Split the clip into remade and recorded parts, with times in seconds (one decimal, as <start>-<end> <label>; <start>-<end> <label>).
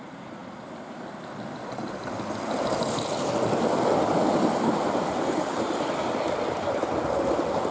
0.0-7.7 recorded